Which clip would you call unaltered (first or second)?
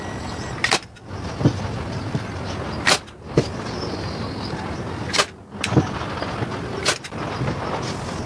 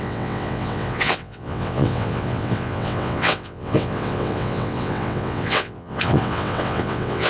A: first